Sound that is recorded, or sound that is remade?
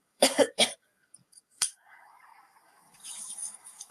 remade